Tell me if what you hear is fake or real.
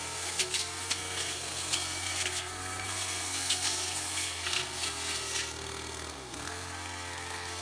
fake